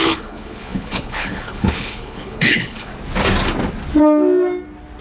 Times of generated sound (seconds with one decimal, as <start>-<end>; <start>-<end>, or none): 0.0-2.9